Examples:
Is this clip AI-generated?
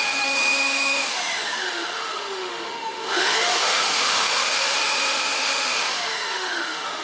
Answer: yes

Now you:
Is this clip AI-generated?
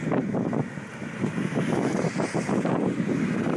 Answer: no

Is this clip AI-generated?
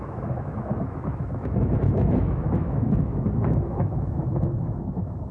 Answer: yes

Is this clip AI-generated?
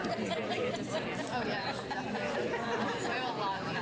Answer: no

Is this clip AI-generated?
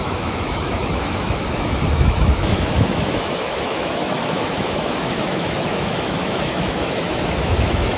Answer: yes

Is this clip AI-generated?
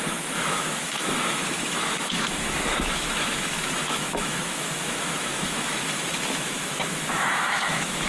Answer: yes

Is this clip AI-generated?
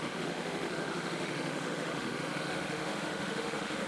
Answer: yes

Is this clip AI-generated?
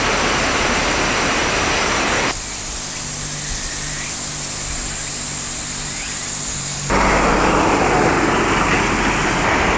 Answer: no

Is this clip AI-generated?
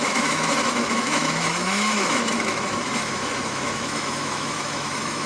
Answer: yes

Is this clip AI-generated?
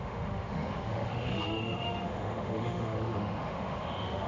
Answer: yes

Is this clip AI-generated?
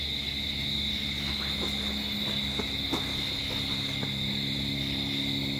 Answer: no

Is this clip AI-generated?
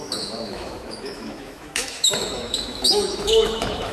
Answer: yes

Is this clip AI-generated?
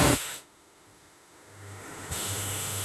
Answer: yes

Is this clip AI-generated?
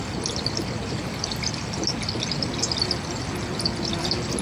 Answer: no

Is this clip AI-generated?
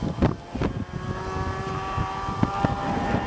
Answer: no